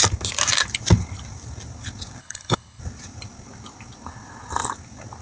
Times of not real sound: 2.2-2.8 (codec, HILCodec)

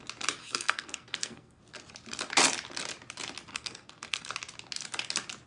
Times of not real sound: 0.4-1.6 (codec, SNAC); 3.5-4.3

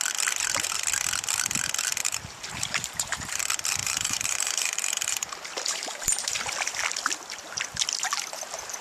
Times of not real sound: 2.0-3.4 (vocoder, BigVGAN v2); 3.8-6.5

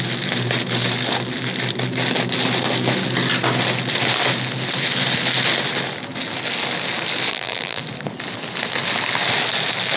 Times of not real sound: 7.3-7.8 (vocoder, BigVGAN v2)

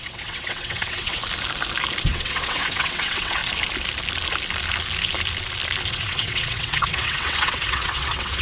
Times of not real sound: 0.0-1.2 (vocoder, WaveNeXt); 2.0-3.4; 5.9-8.4

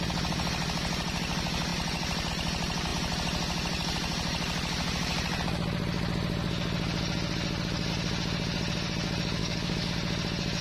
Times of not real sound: 9.4-9.9 (codec, DAC)